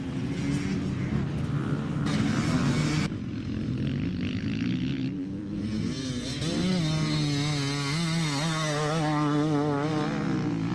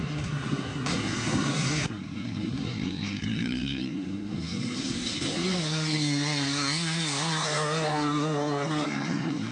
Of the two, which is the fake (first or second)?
second